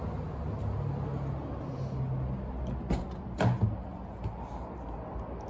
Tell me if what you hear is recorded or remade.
recorded